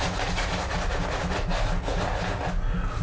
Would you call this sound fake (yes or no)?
no